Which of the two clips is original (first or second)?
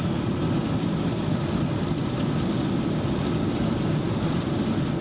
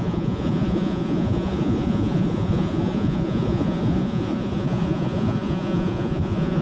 first